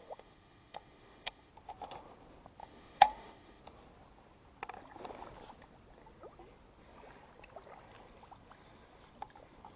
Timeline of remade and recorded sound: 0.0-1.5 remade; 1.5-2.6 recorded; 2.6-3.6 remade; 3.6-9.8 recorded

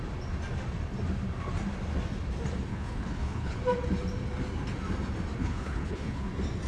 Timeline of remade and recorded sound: 0.0-2.7 recorded; 2.7-3.6 remade; 3.6-5.4 recorded; 5.4-6.3 remade; 6.3-6.7 recorded

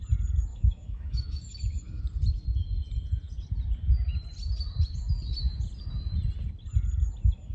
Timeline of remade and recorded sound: 0.0-0.5 recorded; 0.5-2.0 remade; 2.0-7.5 recorded

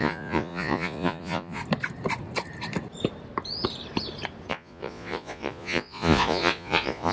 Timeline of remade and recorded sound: 0.0-1.6 remade; 1.6-4.5 recorded; 4.5-7.1 remade

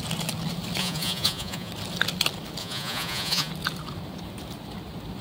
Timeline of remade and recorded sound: 0.0-0.8 recorded; 0.8-1.7 remade; 1.7-2.6 recorded; 2.6-3.5 remade; 3.5-5.2 recorded

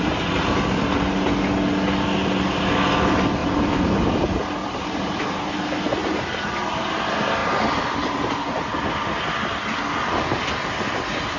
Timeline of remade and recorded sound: 0.0-3.4 recorded; 3.4-4.1 remade; 4.1-4.6 recorded; 4.6-5.2 remade; 5.2-6.0 recorded; 6.0-6.8 remade; 6.8-7.4 recorded; 7.4-8.3 remade; 8.3-11.4 recorded

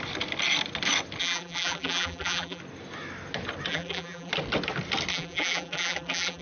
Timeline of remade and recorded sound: 0.0-1.2 recorded; 1.2-2.6 remade; 2.6-3.7 recorded; 3.7-4.3 remade; 4.3-5.1 recorded; 5.1-6.4 remade

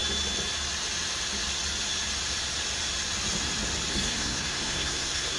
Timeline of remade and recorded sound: 0.0-3.9 recorded; 3.9-5.4 remade